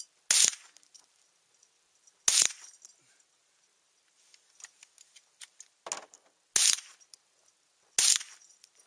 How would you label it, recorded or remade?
recorded